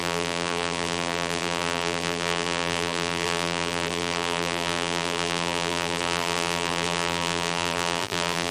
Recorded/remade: remade